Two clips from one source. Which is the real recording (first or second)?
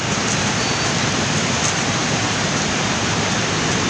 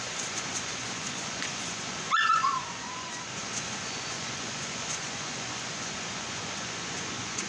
first